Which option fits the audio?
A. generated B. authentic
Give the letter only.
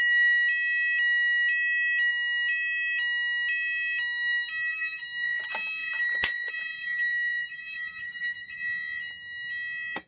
B